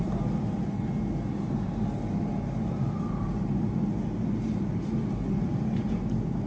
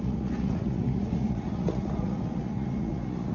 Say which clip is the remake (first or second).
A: second